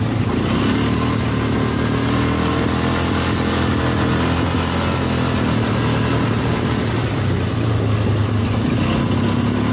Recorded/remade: recorded